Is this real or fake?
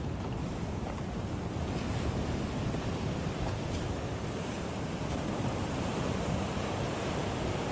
real